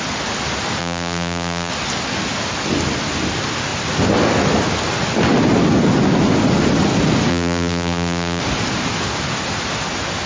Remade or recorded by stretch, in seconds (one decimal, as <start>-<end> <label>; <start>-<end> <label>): 0.0-0.8 recorded; 0.8-1.7 remade; 1.7-7.3 recorded; 7.3-8.4 remade; 8.4-10.3 recorded